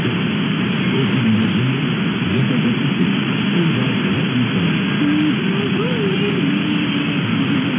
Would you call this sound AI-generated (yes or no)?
no